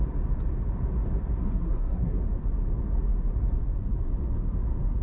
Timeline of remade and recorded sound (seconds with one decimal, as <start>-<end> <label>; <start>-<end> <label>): 0.0-1.4 recorded; 1.4-2.2 remade; 2.2-5.0 recorded